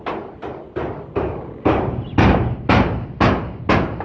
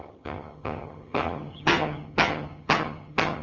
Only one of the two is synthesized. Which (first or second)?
second